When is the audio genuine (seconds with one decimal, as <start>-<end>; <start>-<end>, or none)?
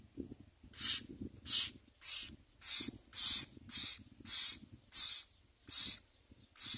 0.0-6.8